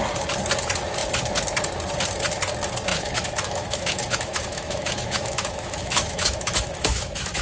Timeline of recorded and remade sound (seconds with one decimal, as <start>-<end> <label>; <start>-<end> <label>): 0.0-2.9 recorded; 2.9-7.4 remade